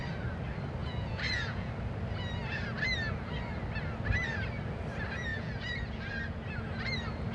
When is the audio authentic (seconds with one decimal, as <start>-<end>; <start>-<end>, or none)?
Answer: 0.0-0.8; 1.7-5.3; 6.0-7.3